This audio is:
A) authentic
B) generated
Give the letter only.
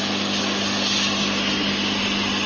A